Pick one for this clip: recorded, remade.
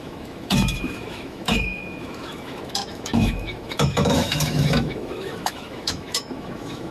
remade